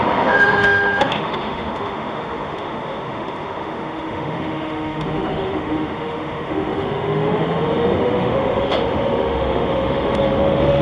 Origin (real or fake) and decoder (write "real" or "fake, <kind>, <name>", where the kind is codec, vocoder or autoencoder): fake, autoencoder, DAC-VAE